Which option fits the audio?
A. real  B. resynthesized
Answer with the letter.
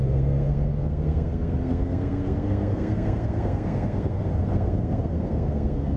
B